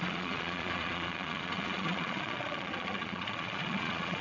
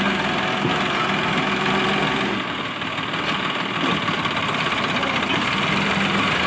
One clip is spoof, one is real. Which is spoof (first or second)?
first